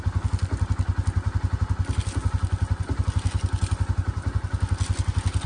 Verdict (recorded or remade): recorded